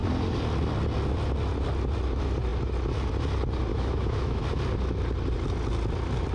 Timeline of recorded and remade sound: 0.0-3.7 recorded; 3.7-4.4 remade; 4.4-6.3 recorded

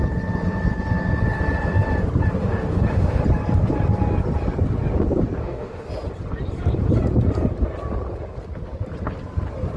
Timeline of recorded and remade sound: 0.0-2.4 recorded; 2.4-3.2 remade; 3.2-5.4 recorded; 5.4-5.9 remade; 5.9-9.8 recorded

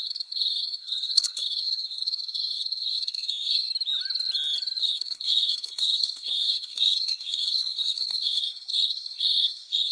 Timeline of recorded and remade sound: 0.0-3.7 remade; 3.7-4.8 recorded; 4.8-9.9 remade

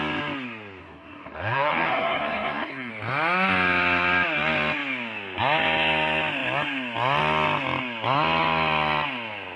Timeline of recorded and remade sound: 0.0-0.8 recorded; 0.8-2.9 remade; 2.9-9.6 recorded

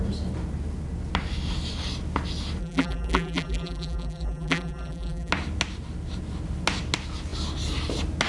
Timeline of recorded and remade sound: 0.0-2.6 recorded; 2.6-5.3 remade; 5.3-8.3 recorded